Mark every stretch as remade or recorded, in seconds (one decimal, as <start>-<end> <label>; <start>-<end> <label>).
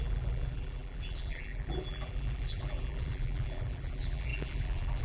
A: 0.0-5.0 remade